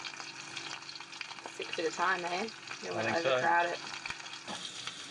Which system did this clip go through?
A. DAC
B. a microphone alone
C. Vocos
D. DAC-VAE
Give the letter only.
B